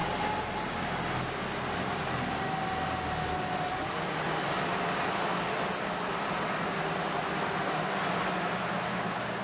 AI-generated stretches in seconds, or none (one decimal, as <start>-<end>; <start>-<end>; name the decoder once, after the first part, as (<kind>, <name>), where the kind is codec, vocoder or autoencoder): none